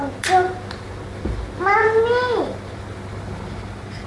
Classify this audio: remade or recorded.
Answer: recorded